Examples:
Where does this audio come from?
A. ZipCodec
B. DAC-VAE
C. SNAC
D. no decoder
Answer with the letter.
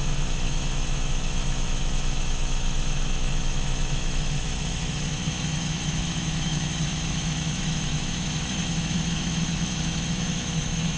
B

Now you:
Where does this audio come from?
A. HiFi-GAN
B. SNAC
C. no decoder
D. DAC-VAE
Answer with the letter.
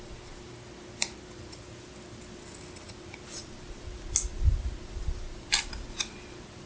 C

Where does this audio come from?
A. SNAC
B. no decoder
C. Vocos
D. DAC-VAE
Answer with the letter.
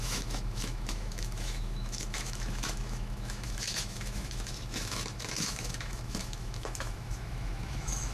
D